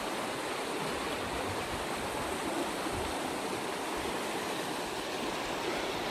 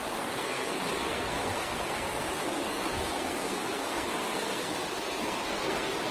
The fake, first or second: second